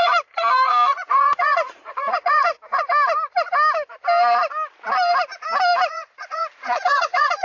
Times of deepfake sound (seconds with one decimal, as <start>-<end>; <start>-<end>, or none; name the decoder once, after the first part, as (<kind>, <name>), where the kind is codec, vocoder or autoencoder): 0.0-2.5 (vocoder, Vocos); 5.9-7.4